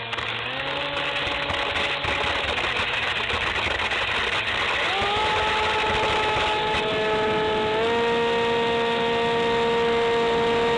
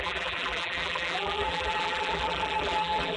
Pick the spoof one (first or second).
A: second